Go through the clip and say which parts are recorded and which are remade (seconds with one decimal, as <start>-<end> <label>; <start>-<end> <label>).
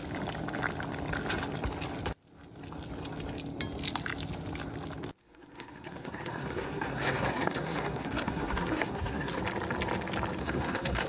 0.0-5.2 recorded; 5.2-9.4 remade; 9.4-10.4 recorded; 10.4-11.1 remade